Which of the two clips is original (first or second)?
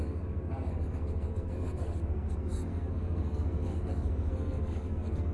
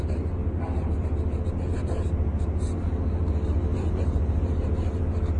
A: second